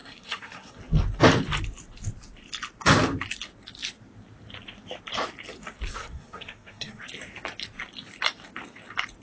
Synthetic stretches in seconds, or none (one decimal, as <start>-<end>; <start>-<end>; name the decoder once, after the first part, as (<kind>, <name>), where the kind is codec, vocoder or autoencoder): 0.0-0.8 (codec, SNAC); 6.0-7.0